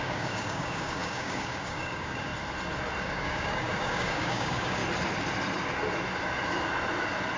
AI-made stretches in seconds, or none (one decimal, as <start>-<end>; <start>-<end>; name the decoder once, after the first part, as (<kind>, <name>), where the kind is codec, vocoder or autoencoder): 0.0-2.3 (codec, DAC); 3.0-4.8